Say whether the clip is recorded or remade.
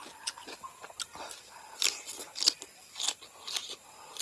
recorded